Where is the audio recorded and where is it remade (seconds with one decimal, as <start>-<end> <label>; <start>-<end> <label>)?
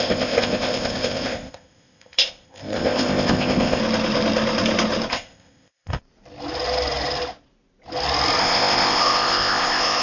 0.0-3.8 remade; 3.8-5.1 recorded; 5.1-6.0 remade; 6.0-8.4 recorded; 8.4-10.0 remade